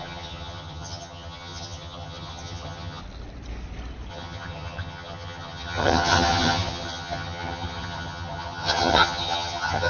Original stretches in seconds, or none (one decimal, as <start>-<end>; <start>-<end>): 3.0-4.1